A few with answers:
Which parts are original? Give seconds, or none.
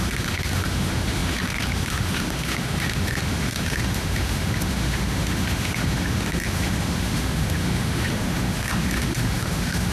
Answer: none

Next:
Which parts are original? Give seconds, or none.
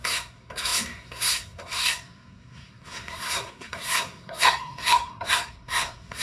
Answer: none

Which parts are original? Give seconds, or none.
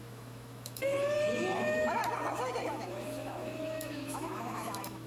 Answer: 0.9-1.6; 2.0-2.7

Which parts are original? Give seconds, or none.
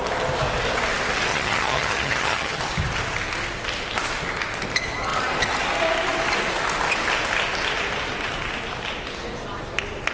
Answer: 0.0-1.3; 2.6-10.1